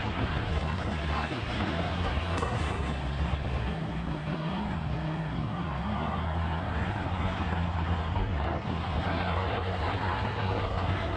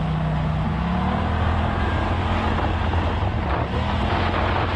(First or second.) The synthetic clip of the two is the first